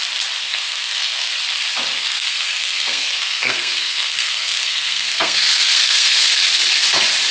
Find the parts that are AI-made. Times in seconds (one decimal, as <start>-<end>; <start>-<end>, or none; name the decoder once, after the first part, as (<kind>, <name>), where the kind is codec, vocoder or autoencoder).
0.4-1.3 (codec, SNAC); 2.0-6.4